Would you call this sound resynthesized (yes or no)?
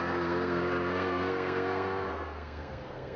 yes